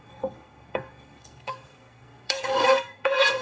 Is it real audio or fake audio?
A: fake